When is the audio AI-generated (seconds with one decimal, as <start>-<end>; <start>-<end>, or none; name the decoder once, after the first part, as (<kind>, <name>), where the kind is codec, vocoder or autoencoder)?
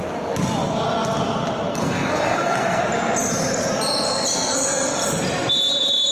1.7-2.8 (codec, SNAC)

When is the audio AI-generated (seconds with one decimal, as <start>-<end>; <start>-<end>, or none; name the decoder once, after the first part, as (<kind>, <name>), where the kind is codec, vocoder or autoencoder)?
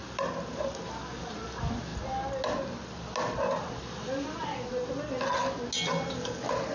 none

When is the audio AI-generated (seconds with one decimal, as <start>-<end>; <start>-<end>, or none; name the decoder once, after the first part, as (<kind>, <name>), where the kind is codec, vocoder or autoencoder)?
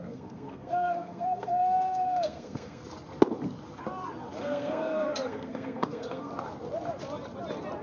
0.0-2.8 (codec, SNAC); 4.4-6.3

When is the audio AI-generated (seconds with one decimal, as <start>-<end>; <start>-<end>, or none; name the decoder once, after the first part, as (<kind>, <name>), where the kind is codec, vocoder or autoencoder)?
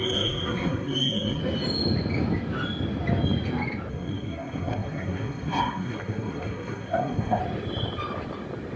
0.0-1.4 (codec, SNAC); 3.9-7.4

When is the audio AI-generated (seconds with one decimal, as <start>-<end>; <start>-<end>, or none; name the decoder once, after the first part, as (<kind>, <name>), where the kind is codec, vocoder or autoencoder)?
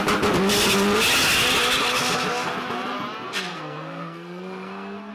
3.5-5.1 (codec, SNAC)